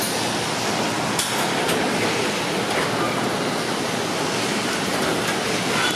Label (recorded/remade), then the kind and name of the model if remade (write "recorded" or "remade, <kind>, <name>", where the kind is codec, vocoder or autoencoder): recorded